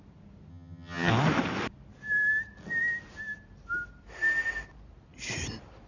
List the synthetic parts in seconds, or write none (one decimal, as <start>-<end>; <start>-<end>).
0.5-1.1